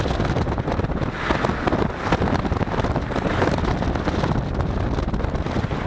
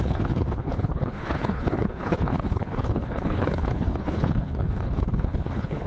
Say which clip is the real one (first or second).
first